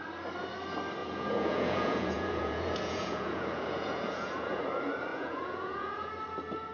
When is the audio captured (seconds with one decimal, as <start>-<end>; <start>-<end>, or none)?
0.0-1.0; 4.6-5.1; 6.1-6.7